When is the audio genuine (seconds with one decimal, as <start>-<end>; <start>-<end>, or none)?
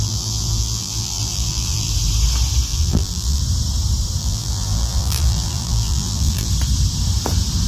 1.9-2.7; 3.4-4.2; 6.5-7.7